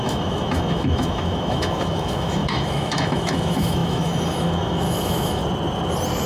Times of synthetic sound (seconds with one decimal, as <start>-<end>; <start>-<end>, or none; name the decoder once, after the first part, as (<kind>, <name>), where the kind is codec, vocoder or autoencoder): 0.0-5.4 (autoencoder, DAC-VAE)